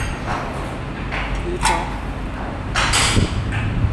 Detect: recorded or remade recorded